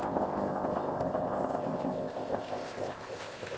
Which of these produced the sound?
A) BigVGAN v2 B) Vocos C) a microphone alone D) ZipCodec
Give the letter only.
D